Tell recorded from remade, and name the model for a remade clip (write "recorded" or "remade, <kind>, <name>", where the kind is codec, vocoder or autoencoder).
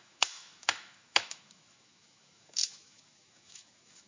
remade, autoencoder, DAC-VAE